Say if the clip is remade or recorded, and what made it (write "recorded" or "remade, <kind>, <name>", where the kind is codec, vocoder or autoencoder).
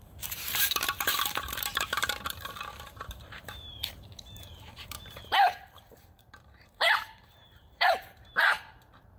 remade, vocoder, BigVGAN v2